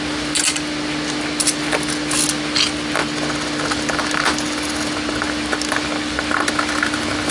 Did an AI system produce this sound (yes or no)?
no